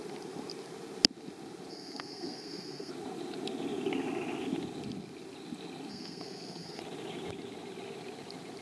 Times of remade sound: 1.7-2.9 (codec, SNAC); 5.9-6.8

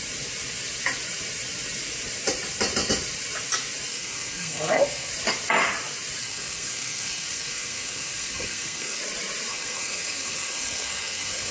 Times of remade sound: 3.9-5.1 (codec, SNAC); 6.2-9.0; 9.5-11.5

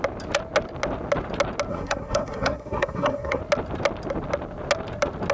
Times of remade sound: 1.7-3.4 (codec, SNAC)

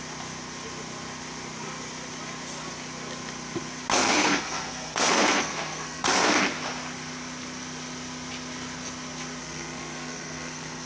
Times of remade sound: 4.0-6.3 (codec, SNAC); 9.4-10.9

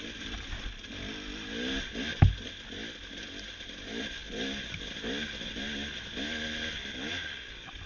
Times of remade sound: none

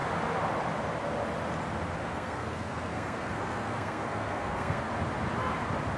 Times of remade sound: 2.0-4.9 (codec, SNAC)